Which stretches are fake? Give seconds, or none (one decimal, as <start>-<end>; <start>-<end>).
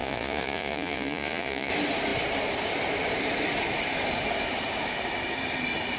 0.0-1.7